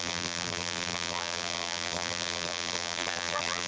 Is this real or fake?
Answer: fake